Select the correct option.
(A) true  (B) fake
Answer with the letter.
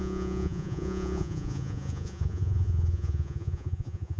B